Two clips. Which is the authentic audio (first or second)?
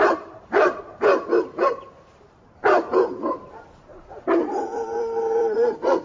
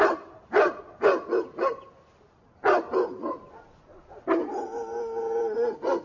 second